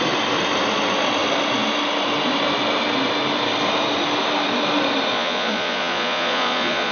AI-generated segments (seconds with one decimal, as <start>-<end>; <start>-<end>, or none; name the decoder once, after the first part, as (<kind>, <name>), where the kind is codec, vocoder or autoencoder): 5.1-6.9 (vocoder, Vocos)